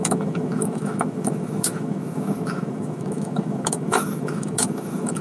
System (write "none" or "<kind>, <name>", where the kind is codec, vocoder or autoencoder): autoencoder, DAC-VAE